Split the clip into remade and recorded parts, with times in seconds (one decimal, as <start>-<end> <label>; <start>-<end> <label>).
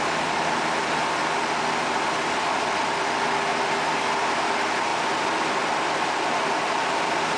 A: 0.0-7.4 recorded